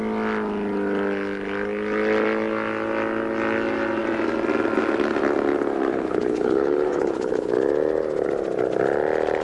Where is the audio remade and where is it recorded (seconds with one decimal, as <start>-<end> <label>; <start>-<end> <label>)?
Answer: 0.0-5.9 recorded; 5.9-7.5 remade; 7.5-9.4 recorded